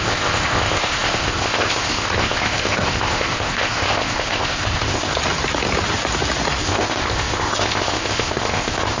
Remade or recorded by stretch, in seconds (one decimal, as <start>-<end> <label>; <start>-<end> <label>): 0.0-5.1 remade; 5.1-6.6 recorded; 6.6-9.0 remade